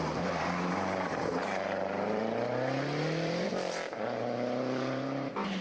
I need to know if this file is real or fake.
fake